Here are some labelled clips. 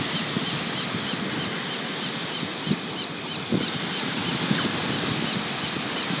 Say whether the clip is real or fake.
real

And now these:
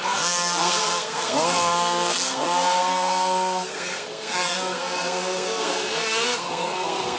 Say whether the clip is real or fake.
fake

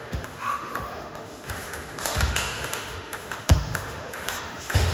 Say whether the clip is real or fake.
fake